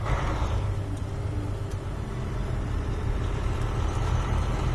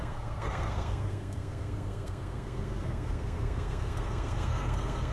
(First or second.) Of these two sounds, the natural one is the first